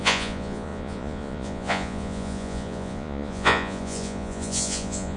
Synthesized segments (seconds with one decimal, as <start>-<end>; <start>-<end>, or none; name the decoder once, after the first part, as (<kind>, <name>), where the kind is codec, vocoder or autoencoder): 0.0-5.2 (vocoder, Vocos)